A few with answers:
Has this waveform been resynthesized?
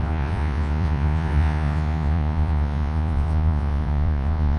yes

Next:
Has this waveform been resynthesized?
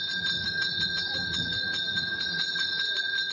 yes